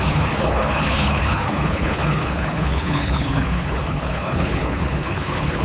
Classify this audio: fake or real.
fake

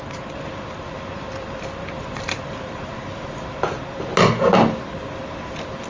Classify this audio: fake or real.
real